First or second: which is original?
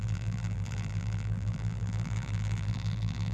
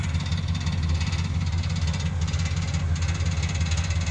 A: second